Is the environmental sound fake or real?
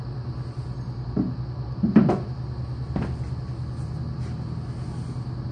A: real